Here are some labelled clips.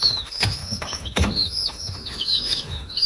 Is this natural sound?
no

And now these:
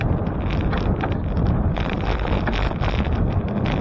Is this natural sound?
yes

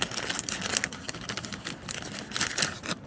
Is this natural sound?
yes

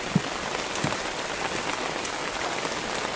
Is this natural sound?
yes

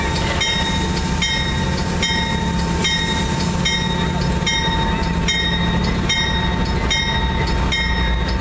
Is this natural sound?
yes